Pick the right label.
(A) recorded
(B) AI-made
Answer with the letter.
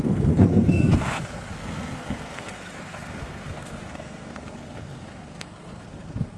B